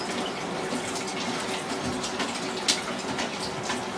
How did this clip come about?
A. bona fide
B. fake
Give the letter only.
A